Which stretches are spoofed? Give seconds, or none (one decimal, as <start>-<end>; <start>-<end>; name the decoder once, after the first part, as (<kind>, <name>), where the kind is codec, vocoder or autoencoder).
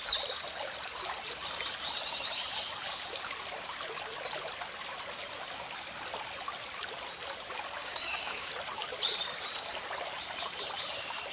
7.8-8.5 (codec, DAC)